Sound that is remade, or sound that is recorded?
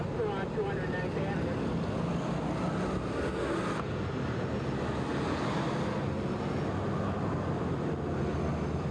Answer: recorded